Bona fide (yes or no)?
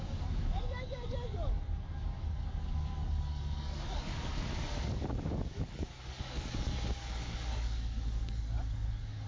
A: no